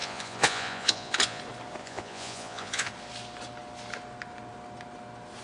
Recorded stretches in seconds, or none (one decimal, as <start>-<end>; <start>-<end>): 1.4-1.8; 2.9-5.4